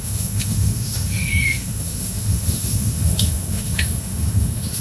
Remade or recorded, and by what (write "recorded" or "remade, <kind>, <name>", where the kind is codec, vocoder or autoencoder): remade, autoencoder, DAC-VAE